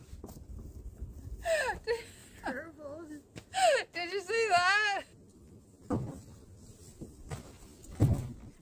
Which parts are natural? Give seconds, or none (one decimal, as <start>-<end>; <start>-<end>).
0.0-8.6